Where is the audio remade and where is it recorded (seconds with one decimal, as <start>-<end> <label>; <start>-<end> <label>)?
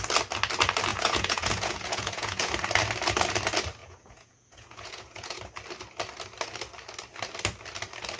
0.0-0.9 recorded; 0.9-2.5 remade; 2.5-3.8 recorded; 3.8-5.4 remade; 5.4-8.2 recorded